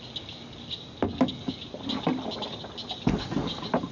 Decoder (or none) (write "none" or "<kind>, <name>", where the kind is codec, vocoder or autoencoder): none